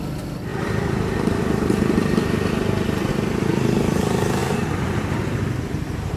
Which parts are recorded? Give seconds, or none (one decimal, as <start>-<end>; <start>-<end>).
0.0-3.5; 4.0-6.2